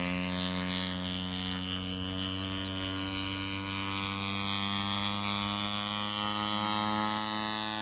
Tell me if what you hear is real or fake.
real